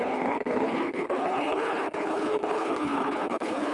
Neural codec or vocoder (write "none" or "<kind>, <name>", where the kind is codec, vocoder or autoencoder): codec, HILCodec